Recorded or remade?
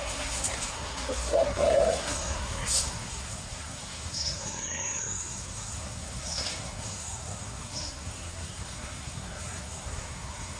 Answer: remade